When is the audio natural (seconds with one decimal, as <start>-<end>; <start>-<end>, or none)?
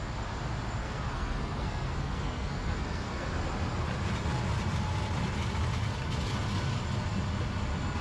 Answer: 0.0-0.8; 3.3-8.0